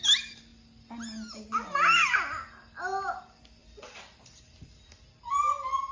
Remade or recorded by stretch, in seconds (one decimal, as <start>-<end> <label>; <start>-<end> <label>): 0.0-5.9 recorded